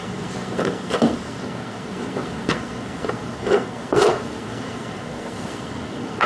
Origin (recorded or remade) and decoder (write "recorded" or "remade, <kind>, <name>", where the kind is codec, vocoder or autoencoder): remade, codec, SNAC